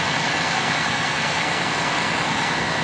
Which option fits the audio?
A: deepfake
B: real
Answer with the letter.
A